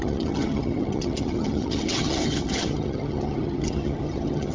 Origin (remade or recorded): remade